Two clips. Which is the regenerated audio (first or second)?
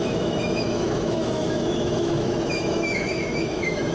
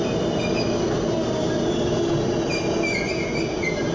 first